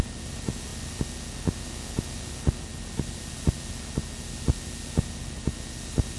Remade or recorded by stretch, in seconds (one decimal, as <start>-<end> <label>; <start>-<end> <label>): 0.0-6.2 recorded